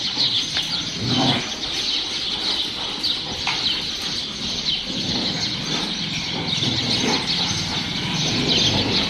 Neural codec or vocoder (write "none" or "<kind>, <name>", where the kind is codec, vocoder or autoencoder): none